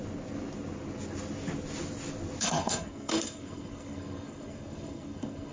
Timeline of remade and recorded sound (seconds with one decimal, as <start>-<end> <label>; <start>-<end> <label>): 0.0-2.4 recorded; 2.4-5.5 remade